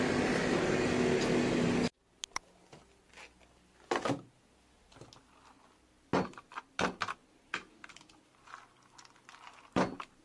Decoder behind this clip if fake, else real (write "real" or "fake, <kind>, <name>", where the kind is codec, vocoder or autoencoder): real